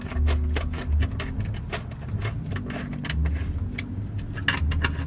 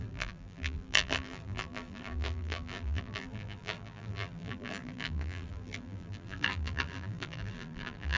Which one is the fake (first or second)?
second